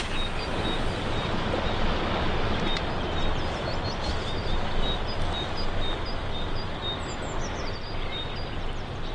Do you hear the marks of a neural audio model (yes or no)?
no